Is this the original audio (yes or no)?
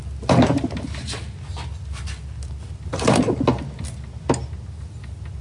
yes